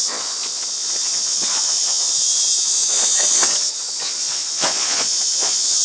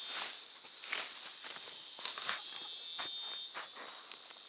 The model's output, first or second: first